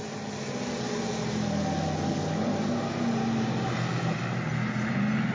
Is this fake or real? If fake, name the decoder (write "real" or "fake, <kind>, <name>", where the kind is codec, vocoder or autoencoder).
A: real